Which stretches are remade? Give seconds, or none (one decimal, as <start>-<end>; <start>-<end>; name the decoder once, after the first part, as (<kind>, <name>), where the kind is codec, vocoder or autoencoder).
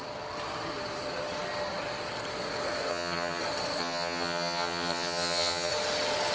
2.9-3.4 (vocoder, HiFi-GAN); 3.8-5.7